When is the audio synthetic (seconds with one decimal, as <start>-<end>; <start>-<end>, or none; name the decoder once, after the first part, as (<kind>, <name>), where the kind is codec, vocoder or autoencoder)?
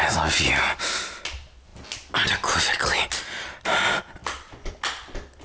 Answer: none